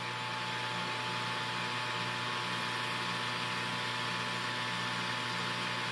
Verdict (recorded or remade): recorded